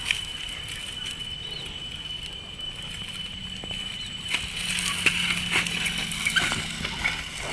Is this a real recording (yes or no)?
yes